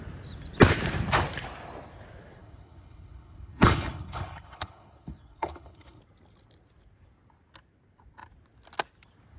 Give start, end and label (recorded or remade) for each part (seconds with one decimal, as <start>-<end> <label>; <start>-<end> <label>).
0.0-2.4 recorded; 2.4-6.0 remade; 6.0-9.4 recorded